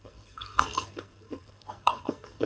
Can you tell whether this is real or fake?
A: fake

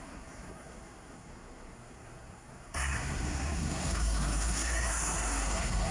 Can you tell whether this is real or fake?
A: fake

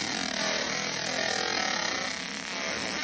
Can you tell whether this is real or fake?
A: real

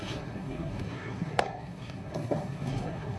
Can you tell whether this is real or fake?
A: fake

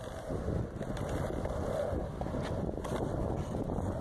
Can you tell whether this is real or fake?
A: real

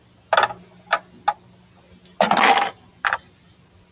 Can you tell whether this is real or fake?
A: real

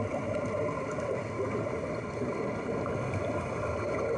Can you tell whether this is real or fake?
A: real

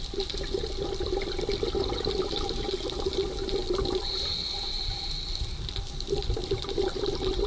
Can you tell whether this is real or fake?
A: real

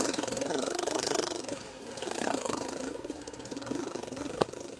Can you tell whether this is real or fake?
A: fake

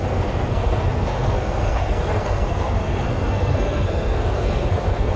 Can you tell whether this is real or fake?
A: fake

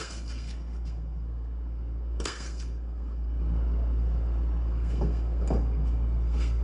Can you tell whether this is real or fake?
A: fake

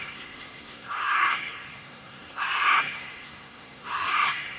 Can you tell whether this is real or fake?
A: fake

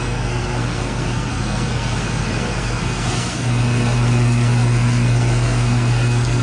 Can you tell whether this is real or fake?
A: fake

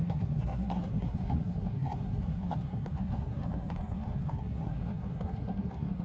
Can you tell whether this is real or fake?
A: fake